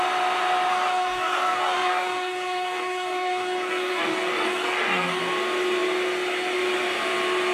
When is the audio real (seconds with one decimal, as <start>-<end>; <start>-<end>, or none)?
0.0-0.7; 5.2-7.5